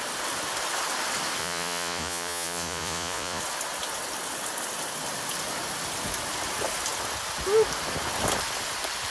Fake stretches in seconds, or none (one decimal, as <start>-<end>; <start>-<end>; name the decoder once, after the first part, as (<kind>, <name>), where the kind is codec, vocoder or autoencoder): 1.4-3.4 (vocoder, Vocos)